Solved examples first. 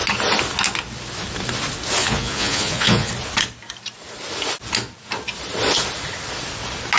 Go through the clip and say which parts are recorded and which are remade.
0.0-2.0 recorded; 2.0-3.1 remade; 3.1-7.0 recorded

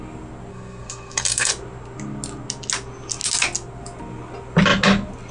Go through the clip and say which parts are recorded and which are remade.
0.0-0.5 recorded; 0.5-1.5 remade; 1.5-5.3 recorded